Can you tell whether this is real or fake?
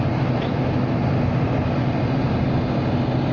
real